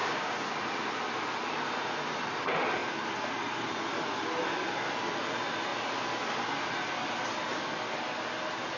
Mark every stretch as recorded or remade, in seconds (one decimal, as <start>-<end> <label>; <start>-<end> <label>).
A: 0.0-0.6 remade; 0.6-8.8 recorded

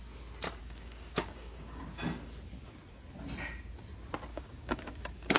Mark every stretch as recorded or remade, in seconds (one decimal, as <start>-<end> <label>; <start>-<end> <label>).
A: 0.0-0.6 recorded; 0.6-1.8 remade; 1.8-4.3 recorded; 4.3-5.4 remade